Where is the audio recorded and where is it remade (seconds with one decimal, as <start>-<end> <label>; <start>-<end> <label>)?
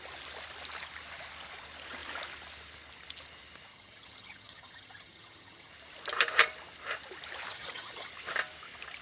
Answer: 0.0-3.7 recorded; 3.7-5.7 remade; 5.7-7.5 recorded; 7.5-8.1 remade; 8.1-9.0 recorded